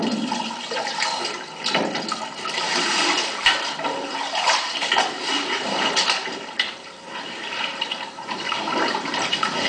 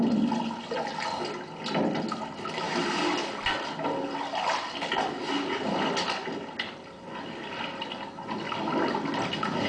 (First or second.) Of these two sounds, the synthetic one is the first